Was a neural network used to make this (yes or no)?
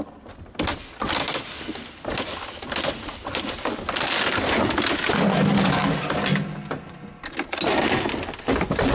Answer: no